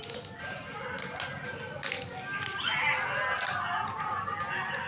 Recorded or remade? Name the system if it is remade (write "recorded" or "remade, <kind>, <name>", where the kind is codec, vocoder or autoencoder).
recorded